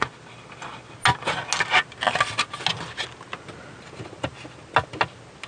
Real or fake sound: real